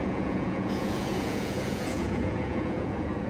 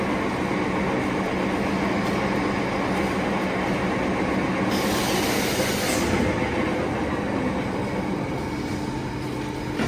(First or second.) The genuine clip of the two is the second